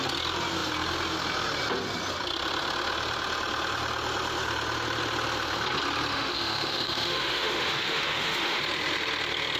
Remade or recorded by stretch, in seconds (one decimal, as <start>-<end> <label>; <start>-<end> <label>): 0.0-6.1 recorded; 6.1-8.6 remade; 8.6-9.6 recorded